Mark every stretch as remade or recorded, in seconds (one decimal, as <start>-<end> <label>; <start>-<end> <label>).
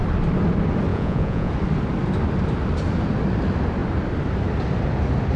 0.0-0.9 recorded; 0.9-1.5 remade; 1.5-5.4 recorded